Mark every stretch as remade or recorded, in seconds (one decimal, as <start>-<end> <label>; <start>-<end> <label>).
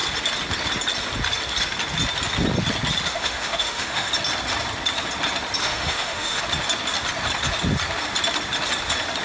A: 0.0-3.1 recorded; 3.1-4.1 remade; 4.1-5.6 recorded; 5.6-6.4 remade; 6.4-9.2 recorded